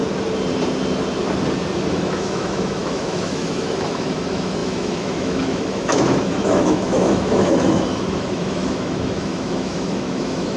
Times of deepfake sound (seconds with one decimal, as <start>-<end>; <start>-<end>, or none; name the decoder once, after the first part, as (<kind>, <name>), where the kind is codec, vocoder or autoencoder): 1.9-10.6 (autoencoder, DAC-VAE)